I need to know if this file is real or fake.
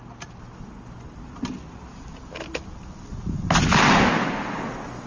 real